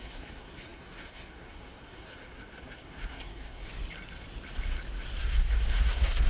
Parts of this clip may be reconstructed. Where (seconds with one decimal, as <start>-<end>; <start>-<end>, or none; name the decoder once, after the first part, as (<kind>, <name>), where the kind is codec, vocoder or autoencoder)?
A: 0.0-3.7 (codec, SNAC); 5.2-6.3